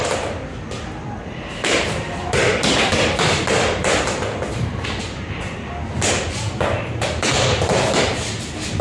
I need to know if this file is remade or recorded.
remade